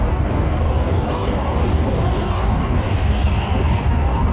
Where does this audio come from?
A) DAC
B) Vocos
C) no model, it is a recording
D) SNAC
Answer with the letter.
A